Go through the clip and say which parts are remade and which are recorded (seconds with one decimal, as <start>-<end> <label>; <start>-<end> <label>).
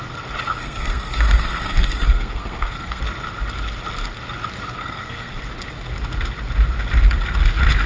0.0-0.6 recorded; 0.6-3.0 remade; 3.0-4.8 recorded; 4.8-5.3 remade; 5.3-7.9 recorded